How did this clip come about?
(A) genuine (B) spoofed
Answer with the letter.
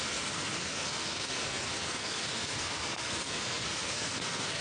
B